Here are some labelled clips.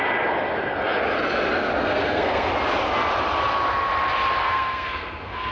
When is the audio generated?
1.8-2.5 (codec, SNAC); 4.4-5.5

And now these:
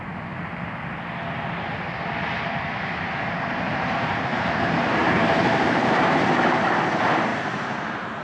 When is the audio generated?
3.5-6.4 (vocoder, BigVGAN v2); 7.3-8.2